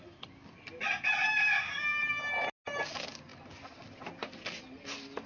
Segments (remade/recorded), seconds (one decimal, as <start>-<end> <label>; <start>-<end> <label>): 0.0-5.3 recorded